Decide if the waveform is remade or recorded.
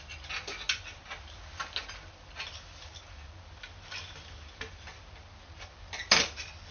recorded